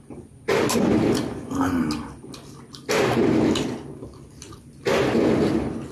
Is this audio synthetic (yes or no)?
no